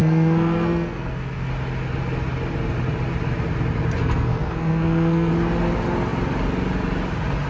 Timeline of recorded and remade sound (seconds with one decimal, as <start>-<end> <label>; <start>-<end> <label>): 0.0-1.5 remade; 1.5-4.0 recorded; 4.0-5.3 remade; 5.3-7.5 recorded